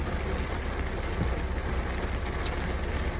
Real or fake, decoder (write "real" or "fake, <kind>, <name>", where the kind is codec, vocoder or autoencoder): real